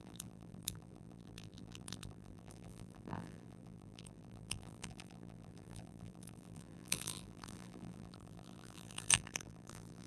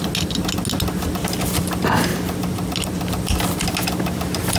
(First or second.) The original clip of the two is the second